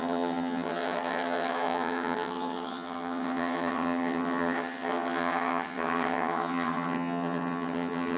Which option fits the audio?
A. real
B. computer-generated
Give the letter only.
B